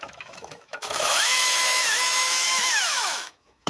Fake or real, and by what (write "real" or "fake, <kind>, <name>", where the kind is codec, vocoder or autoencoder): fake, autoencoder, DAC-VAE